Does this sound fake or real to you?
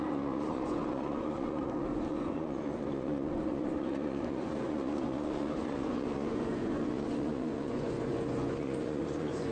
fake